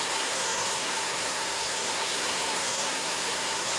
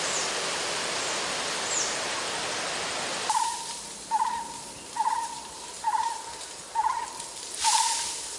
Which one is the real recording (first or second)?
second